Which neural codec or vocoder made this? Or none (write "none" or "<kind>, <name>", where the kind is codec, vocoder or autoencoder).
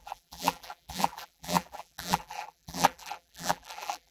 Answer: vocoder, BigVGAN v2